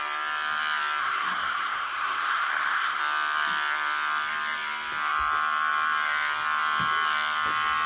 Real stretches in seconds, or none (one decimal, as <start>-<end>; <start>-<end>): 0.0-1.0; 3.0-7.9

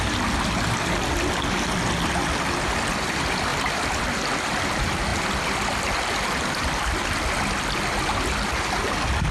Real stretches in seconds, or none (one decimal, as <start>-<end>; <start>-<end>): 0.0-9.3

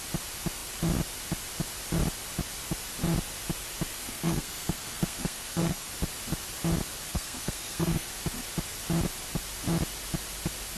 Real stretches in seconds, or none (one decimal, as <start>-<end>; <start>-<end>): 0.0-3.9; 5.9-7.1; 8.1-10.8

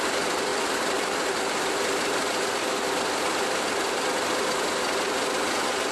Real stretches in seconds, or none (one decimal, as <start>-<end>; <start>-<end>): 0.0-0.5; 1.7-5.9

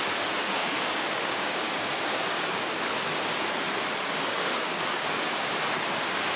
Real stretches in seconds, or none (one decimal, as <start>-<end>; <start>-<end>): 0.0-0.4; 2.9-4.1; 5.5-6.4

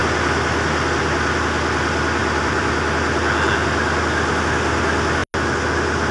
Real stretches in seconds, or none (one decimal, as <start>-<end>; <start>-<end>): 0.0-2.2; 2.7-6.1